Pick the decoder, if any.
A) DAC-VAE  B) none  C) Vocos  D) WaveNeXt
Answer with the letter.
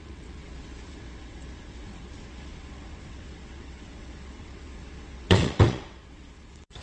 D